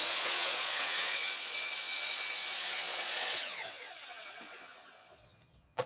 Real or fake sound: fake